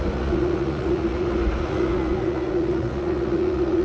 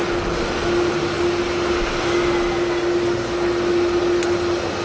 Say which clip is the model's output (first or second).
first